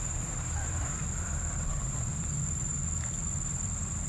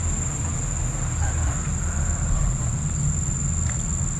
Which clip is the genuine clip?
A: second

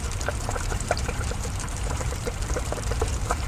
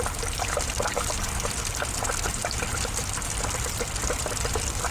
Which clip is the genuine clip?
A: second